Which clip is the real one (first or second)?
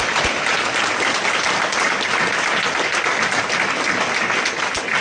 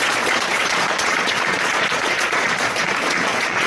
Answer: first